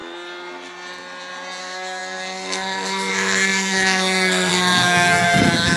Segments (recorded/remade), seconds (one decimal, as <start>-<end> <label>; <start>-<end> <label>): 0.0-1.6 recorded; 1.6-5.8 remade